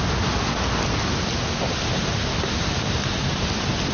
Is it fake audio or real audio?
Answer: real